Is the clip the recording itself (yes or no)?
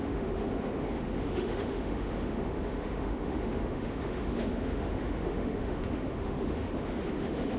no